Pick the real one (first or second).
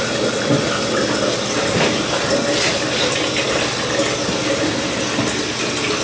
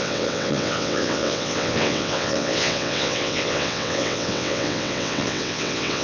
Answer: first